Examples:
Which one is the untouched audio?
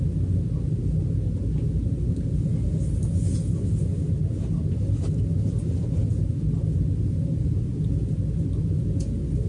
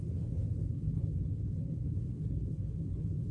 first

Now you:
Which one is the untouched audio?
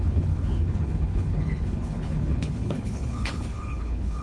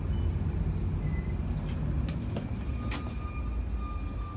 second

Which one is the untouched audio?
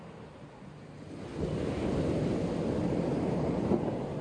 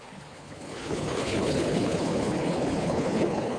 first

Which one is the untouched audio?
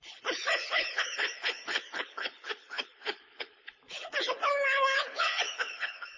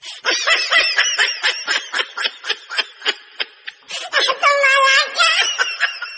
second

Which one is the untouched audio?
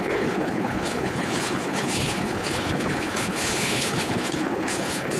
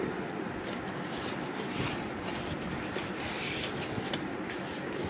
second